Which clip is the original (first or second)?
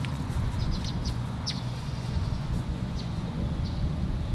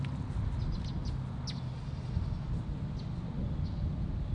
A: second